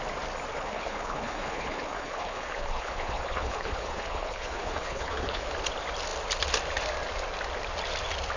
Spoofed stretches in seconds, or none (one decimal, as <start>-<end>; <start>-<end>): 0.5-5.5